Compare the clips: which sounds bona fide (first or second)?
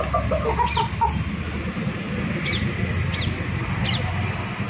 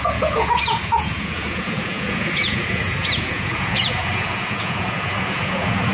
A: first